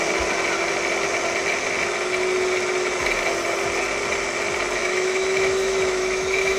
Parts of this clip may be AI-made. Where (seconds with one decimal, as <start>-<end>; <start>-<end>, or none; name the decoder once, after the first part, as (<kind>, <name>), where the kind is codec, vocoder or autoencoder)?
4.8-6.6 (autoencoder, DAC-VAE)

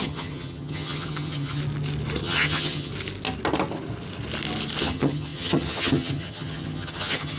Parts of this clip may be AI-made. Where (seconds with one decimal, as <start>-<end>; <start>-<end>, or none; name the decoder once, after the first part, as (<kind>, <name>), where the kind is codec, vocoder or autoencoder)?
0.0-1.6 (vocoder, HiFi-GAN); 2.2-2.9; 4.8-7.4

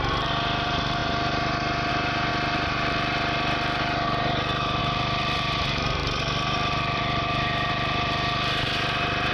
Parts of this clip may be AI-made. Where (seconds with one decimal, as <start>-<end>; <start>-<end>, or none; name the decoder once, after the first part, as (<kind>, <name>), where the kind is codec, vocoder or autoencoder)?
0.0-9.3 (vocoder, BigVGAN v2)

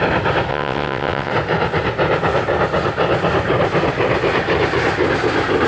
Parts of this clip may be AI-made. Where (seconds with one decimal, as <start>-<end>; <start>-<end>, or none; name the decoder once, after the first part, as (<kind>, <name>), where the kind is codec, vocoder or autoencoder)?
0.5-1.3 (vocoder, WaveNeXt)

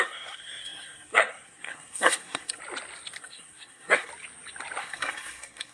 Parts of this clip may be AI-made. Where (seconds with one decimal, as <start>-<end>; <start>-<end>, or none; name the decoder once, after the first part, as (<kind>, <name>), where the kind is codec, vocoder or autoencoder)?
0.0-2.6 (codec, SNAC); 3.2-4.1; 4.8-5.7

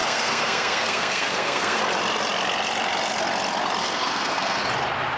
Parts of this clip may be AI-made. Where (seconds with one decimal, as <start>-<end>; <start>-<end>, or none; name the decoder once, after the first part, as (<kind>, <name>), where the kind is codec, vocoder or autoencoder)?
0.0-1.8 (codec, SNAC); 3.8-4.6

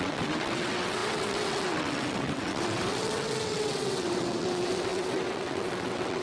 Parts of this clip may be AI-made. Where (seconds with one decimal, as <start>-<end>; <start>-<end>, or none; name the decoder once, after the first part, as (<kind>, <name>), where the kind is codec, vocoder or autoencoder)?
0.0-6.2 (vocoder, WaveNeXt)